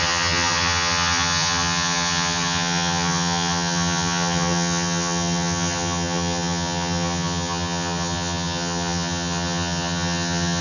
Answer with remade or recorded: remade